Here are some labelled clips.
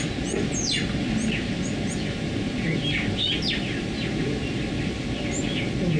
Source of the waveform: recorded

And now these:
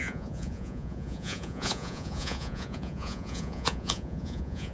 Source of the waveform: remade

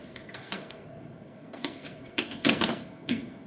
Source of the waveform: remade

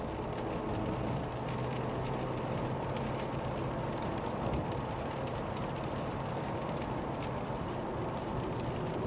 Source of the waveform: recorded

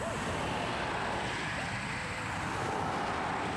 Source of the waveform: recorded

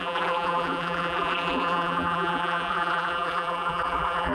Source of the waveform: remade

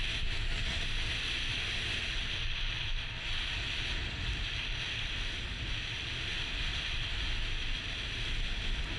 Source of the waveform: recorded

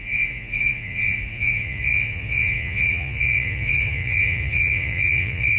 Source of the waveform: remade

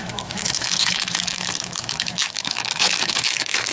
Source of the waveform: remade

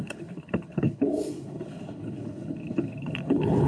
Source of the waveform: remade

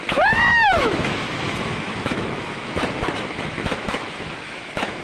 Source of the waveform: remade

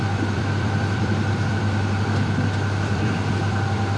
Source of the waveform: remade